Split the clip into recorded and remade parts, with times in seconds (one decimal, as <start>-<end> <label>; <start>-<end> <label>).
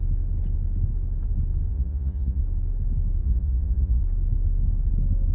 0.0-1.7 recorded; 1.7-2.4 remade; 2.4-3.2 recorded; 3.2-4.0 remade; 4.0-5.3 recorded